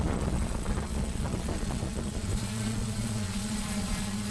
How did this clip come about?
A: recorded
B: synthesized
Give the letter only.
B